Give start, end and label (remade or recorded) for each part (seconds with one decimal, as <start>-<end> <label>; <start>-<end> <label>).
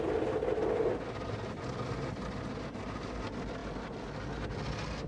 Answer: 0.0-5.1 recorded